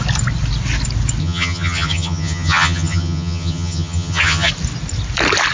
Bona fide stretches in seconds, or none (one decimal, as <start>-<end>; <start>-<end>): 0.0-1.2; 4.5-5.5